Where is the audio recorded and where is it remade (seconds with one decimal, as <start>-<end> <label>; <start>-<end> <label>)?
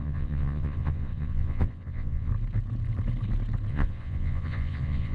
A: 0.0-2.3 remade; 2.3-3.7 recorded; 3.7-5.1 remade